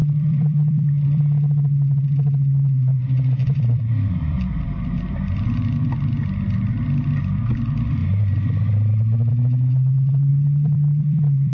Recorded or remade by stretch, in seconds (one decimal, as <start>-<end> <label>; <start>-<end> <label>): 0.0-1.2 remade; 1.2-2.9 recorded; 2.9-5.9 remade; 5.9-10.3 recorded; 10.3-11.5 remade